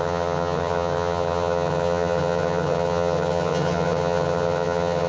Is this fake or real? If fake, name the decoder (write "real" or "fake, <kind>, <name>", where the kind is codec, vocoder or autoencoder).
fake, vocoder, HiFi-GAN